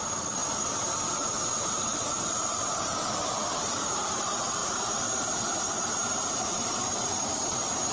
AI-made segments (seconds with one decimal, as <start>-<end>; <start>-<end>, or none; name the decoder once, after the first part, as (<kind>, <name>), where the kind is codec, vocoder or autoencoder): 0.0-7.9 (vocoder, BigVGAN v2)